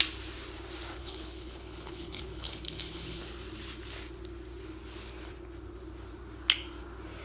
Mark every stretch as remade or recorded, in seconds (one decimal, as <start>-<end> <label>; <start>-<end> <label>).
0.0-1.0 recorded; 1.0-3.2 remade; 3.2-7.2 recorded